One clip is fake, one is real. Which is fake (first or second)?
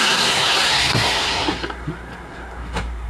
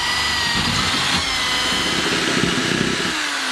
first